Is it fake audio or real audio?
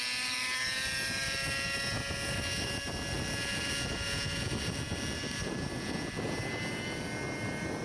real